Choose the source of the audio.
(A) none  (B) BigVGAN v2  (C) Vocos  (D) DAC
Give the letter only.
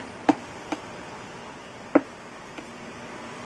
A